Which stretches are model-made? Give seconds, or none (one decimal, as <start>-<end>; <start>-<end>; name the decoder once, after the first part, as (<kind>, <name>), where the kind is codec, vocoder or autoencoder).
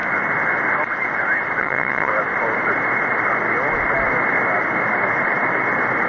1.6-2.1 (vocoder, HiFi-GAN)